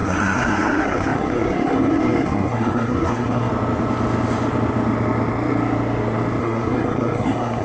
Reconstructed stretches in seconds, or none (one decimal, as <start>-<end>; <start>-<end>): 0.0-3.5; 6.4-7.6